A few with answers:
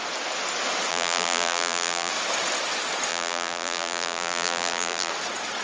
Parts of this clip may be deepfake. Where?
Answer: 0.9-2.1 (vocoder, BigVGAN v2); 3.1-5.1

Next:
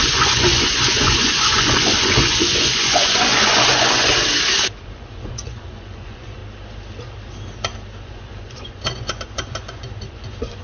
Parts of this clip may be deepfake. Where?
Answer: 0.0-4.1 (vocoder, Vocos); 4.8-6.4; 8.0-10.6